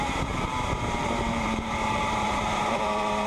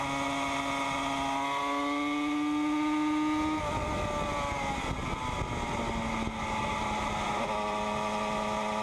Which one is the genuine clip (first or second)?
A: second